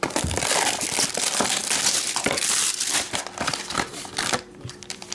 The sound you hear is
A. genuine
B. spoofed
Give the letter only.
B